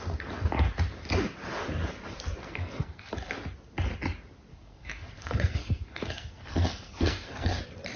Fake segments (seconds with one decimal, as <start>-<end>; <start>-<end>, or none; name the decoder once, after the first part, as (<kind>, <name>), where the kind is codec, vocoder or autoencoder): 2.4-3.1 (codec, SNAC); 4.5-7.6